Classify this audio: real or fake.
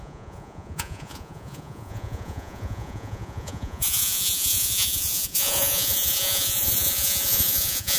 fake